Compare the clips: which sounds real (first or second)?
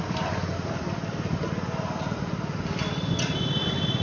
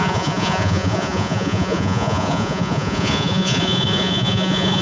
first